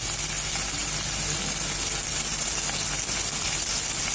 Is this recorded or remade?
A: recorded